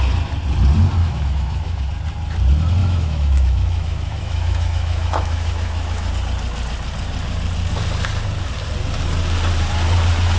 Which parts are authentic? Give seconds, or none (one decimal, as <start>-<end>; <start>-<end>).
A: 0.0-1.0; 1.9-2.8; 6.1-10.4